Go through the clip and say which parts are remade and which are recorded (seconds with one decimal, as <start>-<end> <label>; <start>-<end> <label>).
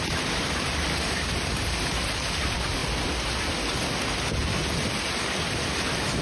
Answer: 0.0-2.8 remade; 2.8-5.5 recorded; 5.5-6.2 remade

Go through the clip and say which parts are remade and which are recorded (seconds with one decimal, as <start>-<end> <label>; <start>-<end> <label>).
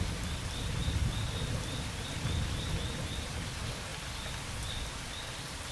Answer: 0.0-5.7 recorded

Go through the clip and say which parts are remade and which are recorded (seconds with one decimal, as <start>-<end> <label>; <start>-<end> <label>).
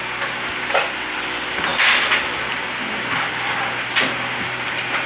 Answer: 0.0-5.1 recorded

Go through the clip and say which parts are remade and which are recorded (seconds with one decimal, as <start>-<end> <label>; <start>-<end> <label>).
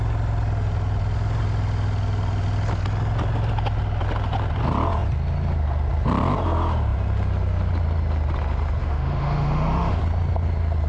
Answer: 0.0-8.8 recorded; 8.8-10.0 remade; 10.0-10.9 recorded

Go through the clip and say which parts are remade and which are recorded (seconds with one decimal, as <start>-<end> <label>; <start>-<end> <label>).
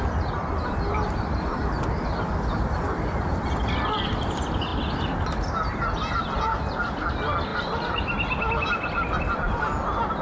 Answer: 0.0-10.2 recorded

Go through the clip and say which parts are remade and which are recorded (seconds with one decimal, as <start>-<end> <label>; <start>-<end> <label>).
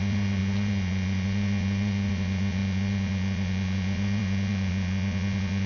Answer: 0.0-5.7 remade